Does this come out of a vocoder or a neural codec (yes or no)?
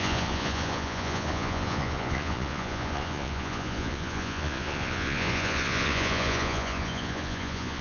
yes